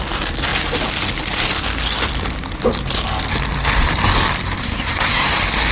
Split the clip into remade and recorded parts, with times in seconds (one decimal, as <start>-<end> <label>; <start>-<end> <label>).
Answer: 0.0-4.6 recorded; 4.6-5.3 remade; 5.3-5.7 recorded